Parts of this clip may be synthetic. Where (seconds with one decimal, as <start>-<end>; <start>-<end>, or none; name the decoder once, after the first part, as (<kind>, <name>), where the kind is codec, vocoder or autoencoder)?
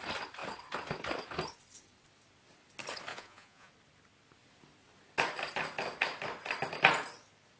3.1-3.7 (vocoder, Vocos)